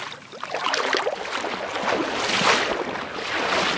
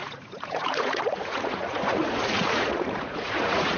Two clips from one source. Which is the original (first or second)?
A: first